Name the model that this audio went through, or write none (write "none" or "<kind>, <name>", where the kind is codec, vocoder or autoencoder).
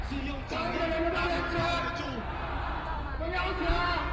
none